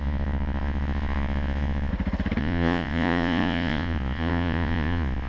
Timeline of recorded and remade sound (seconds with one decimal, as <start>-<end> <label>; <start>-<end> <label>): 0.0-1.9 remade; 1.9-2.4 recorded; 2.4-5.3 remade